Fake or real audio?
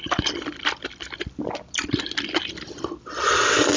real